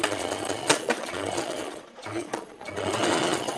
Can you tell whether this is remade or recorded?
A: remade